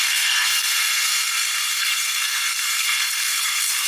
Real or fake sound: fake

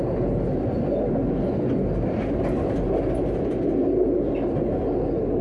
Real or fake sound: real